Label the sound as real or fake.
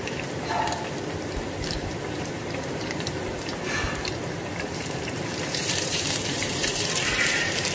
fake